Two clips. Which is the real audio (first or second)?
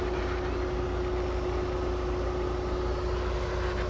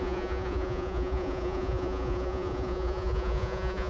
first